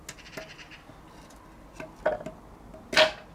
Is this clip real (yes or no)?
yes